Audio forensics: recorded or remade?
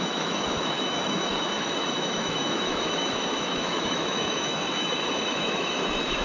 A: remade